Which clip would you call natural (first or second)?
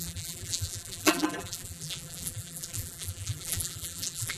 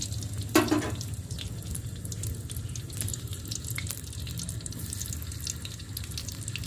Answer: second